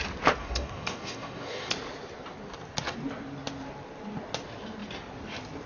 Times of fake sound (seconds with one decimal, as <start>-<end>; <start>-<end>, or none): 0.4-1.7